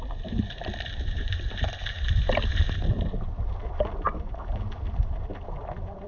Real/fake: fake